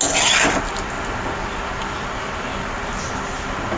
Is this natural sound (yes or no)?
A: yes